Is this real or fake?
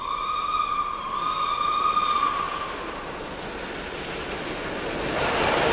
real